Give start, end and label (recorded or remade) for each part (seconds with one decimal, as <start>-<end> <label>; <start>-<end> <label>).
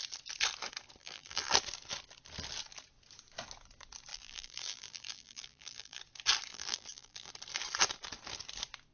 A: 0.0-1.0 recorded; 1.0-1.5 remade; 1.5-4.1 recorded; 4.1-6.0 remade; 6.0-6.5 recorded; 6.5-7.3 remade; 7.3-8.9 recorded